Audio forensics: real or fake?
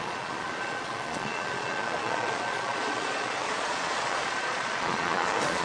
fake